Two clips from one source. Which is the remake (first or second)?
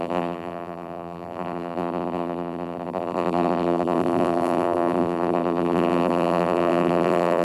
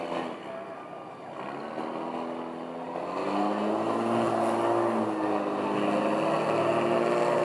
first